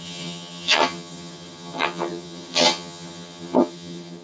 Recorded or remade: remade